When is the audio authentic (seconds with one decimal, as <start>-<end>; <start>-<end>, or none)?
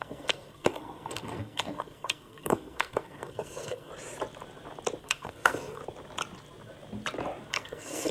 3.9-5.0; 5.8-7.5